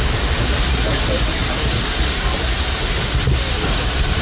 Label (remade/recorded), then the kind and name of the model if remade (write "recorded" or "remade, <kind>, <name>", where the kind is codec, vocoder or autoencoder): recorded